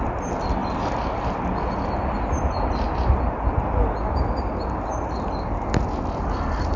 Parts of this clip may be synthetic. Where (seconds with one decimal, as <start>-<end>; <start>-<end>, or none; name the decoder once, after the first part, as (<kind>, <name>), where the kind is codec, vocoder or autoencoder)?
none